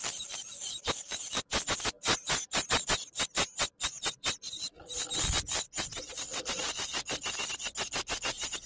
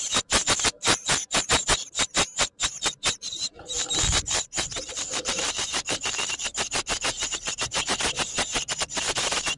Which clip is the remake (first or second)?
second